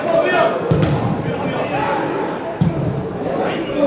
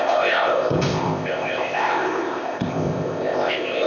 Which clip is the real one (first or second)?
first